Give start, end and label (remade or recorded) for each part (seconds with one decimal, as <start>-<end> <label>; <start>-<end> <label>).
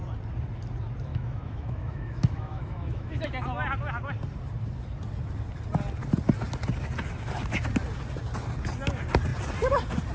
0.0-1.1 recorded; 1.1-3.3 remade; 3.3-10.1 recorded